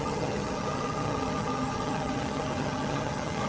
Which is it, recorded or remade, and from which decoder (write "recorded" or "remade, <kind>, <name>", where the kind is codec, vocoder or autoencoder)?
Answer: remade, vocoder, HiFi-GAN